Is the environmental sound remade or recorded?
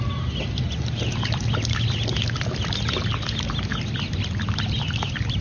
recorded